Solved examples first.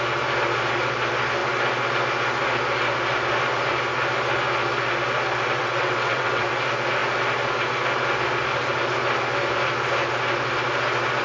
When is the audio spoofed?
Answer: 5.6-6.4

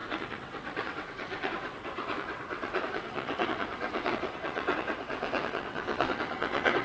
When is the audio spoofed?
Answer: 0.0-6.8

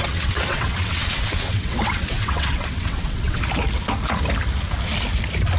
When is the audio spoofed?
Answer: 0.0-3.4

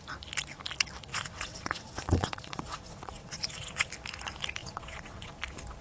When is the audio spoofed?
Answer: 1.1-3.9; 4.6-5.3